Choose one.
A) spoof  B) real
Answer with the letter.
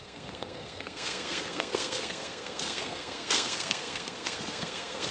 A